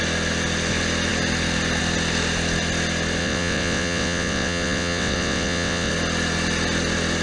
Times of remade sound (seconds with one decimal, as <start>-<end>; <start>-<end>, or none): 3.2-5.9

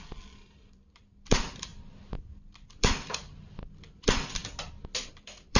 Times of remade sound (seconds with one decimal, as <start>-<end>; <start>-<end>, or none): 0.0-4.4; 5.1-5.6

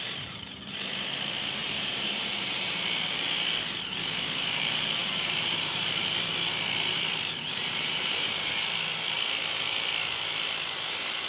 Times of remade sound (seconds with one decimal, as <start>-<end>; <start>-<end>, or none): 1.6-2.7; 5.0-5.9; 7.6-8.5